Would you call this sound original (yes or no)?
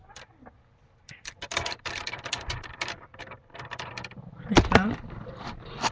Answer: no